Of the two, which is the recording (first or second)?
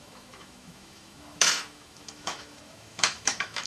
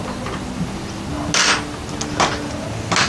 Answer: second